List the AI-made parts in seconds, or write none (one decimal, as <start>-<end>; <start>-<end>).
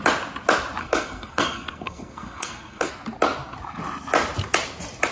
0.8-2.9